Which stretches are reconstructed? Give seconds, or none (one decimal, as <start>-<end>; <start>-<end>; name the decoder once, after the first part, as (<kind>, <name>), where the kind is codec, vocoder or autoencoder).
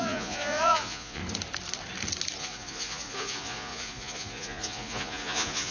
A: 0.0-1.2 (vocoder, Vocos); 2.4-5.7